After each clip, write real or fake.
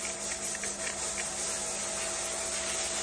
real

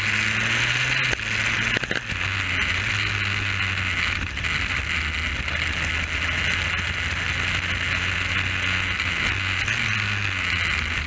real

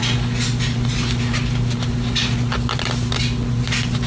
real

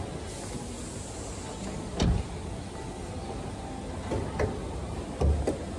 real